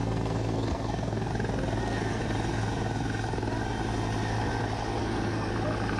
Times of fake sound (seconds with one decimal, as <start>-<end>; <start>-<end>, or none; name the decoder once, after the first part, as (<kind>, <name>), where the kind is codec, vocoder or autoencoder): 0.0-1.3 (codec, SNAC); 1.8-2.2; 5.0-5.5